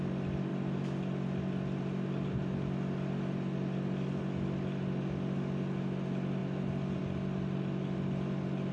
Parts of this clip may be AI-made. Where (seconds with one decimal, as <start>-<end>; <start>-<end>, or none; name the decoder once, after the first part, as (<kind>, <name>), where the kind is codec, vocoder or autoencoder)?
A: none